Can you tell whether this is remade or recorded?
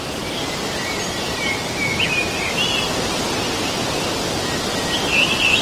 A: recorded